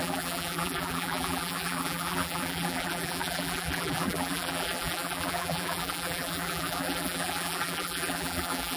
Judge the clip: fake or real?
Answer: fake